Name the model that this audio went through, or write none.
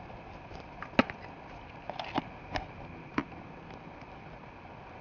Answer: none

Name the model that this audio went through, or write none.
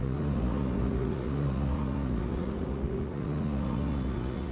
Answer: vocoder, Vocos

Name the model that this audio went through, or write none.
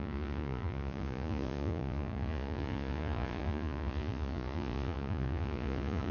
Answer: vocoder, Vocos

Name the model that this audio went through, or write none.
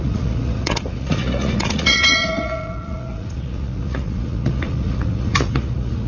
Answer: vocoder, Vocos